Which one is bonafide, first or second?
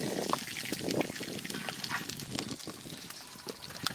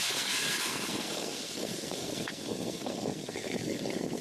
first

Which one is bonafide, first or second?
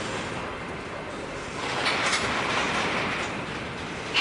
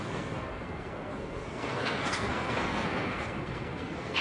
first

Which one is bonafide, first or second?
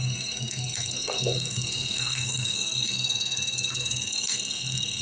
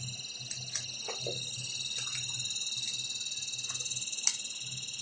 second